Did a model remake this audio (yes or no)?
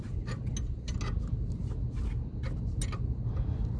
no